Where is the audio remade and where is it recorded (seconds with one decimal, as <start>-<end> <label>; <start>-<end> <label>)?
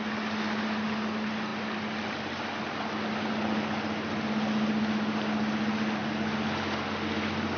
0.0-7.6 recorded